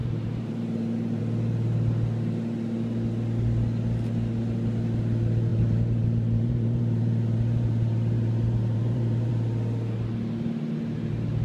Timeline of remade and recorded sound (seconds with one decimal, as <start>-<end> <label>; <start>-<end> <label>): 0.0-1.2 remade; 1.2-5.5 recorded; 5.5-9.3 remade; 9.3-11.4 recorded